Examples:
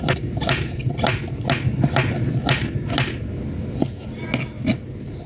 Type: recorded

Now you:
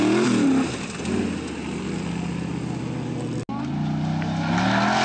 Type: recorded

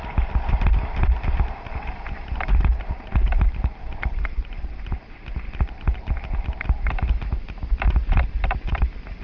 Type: recorded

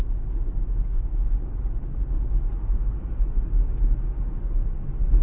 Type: recorded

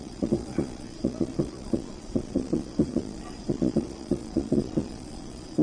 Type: remade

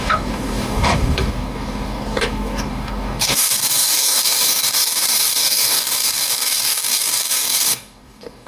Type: remade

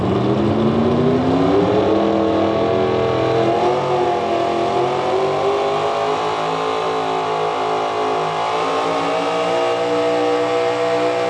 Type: recorded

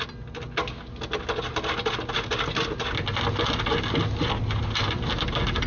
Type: recorded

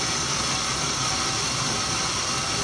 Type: remade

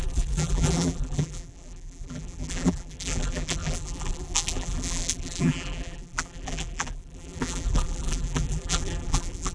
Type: remade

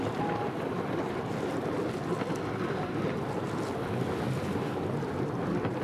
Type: recorded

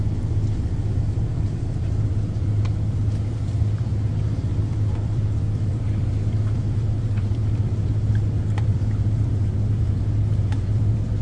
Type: remade